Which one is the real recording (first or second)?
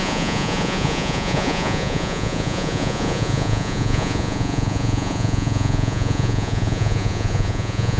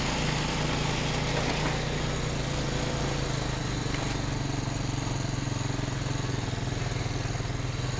second